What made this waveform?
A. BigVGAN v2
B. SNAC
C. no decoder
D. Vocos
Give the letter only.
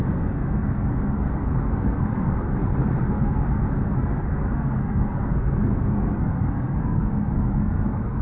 B